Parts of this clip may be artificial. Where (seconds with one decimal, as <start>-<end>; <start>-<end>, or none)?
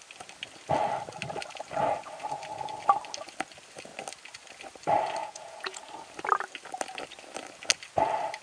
5.2-5.8